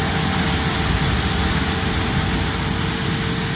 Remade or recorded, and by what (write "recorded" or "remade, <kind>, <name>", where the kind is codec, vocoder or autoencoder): recorded